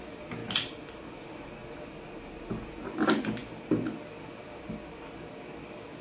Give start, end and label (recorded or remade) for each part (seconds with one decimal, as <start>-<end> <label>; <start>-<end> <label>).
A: 0.0-6.0 recorded